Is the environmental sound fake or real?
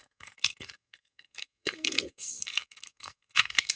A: fake